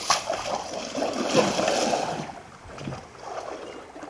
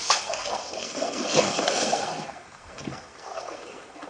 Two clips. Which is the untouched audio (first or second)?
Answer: first